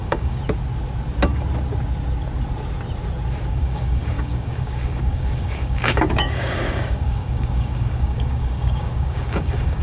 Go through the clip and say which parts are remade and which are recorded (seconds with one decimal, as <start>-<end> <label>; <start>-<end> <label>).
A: 0.0-0.4 remade; 0.4-3.5 recorded; 3.5-9.8 remade